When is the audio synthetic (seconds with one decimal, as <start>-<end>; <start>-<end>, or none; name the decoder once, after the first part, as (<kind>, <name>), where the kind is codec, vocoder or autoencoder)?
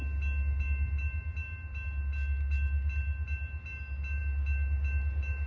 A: none